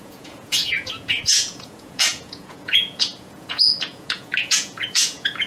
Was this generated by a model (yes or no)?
yes